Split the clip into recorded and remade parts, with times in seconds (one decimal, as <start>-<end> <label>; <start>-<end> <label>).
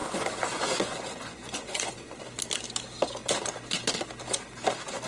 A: 0.0-2.2 remade; 2.2-5.1 recorded